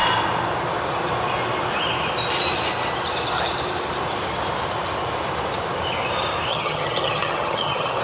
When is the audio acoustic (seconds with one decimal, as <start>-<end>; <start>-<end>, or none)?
0.0-6.5